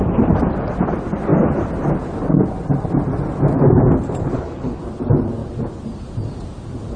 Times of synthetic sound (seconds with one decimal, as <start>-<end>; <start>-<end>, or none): 4.2-4.8